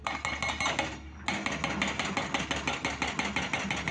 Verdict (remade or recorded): recorded